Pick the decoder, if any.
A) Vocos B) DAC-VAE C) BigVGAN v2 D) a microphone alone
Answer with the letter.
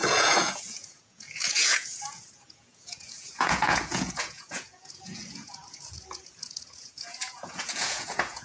A